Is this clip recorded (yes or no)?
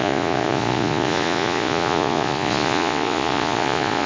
no